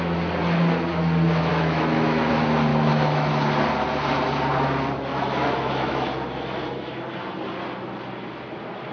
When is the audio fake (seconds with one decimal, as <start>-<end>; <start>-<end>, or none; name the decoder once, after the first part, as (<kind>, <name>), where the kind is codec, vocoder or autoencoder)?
1.5-2.3 (autoencoder, DAC-VAE); 2.7-3.3; 5.1-7.0